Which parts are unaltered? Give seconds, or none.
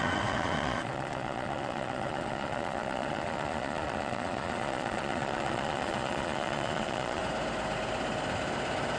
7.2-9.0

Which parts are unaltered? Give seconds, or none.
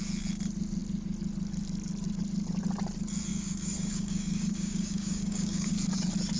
0.0-3.3; 5.7-6.4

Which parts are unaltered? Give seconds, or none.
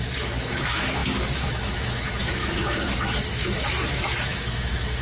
none